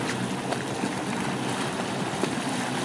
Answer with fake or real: real